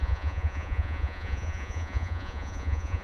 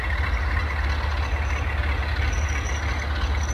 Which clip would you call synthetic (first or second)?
first